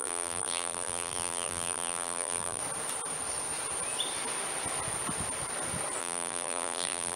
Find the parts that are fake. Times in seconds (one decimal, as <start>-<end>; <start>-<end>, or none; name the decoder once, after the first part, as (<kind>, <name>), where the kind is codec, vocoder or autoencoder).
0.0-2.6 (vocoder, BigVGAN v2); 6.0-7.2